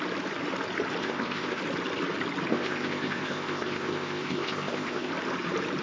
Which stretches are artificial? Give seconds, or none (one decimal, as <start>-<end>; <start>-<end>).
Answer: 1.0-1.6; 2.5-5.1